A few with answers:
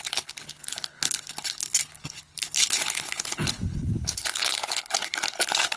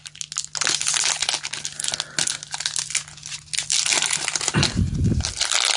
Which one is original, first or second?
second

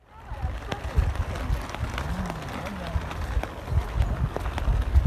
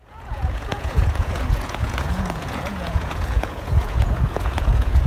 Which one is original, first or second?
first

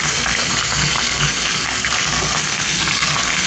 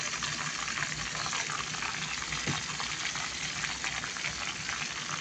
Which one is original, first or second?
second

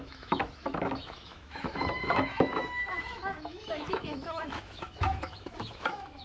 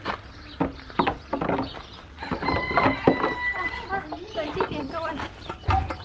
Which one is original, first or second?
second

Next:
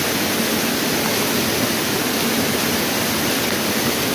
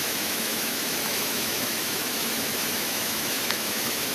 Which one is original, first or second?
first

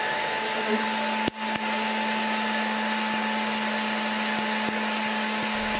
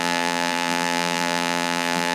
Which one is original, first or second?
first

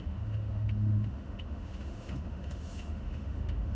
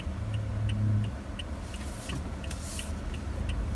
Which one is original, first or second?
second